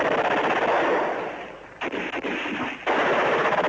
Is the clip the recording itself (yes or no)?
yes